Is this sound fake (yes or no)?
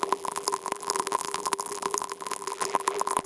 yes